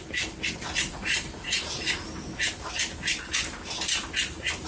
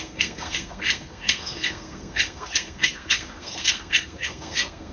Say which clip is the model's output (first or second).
second